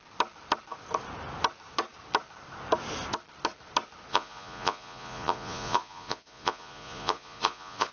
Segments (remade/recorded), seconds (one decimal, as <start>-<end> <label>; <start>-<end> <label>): 0.0-4.1 recorded; 4.1-7.9 remade